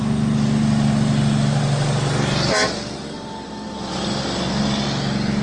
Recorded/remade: recorded